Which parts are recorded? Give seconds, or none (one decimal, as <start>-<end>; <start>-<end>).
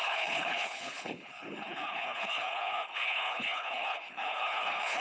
none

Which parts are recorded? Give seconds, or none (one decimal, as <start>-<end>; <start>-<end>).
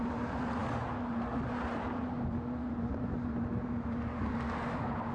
0.0-5.1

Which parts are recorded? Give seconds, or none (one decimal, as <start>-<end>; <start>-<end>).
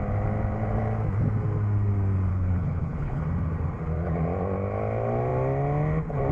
0.0-2.3; 3.2-6.3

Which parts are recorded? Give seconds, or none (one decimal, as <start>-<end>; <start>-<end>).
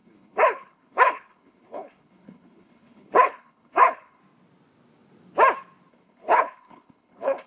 4.2-5.9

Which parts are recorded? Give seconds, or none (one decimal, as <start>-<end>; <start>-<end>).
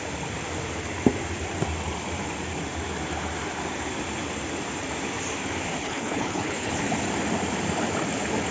0.0-5.8; 6.7-8.5